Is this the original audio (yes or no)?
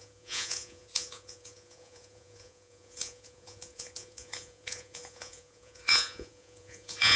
no